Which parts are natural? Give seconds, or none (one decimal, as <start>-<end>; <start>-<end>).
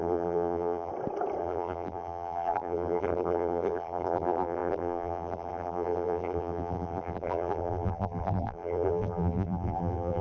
0.9-1.4